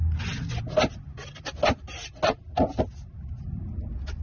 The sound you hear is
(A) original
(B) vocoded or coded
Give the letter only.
A